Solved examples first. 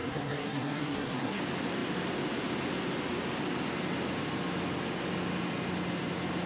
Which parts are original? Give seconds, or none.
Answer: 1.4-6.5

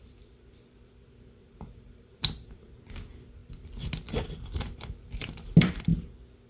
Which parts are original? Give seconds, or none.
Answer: 3.4-4.4; 5.9-6.5